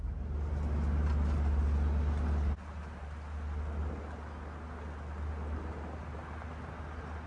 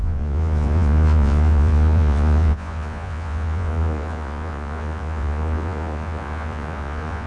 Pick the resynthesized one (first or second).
second